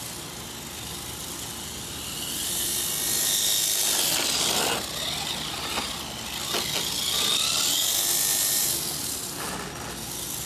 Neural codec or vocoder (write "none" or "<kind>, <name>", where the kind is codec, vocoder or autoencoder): none